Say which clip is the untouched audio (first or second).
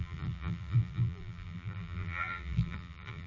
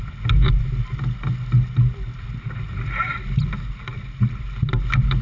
second